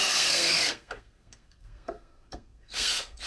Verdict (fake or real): fake